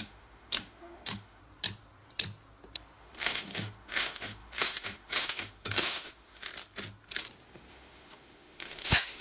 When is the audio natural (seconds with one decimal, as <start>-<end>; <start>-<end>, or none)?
1.4-3.0; 6.5-7.7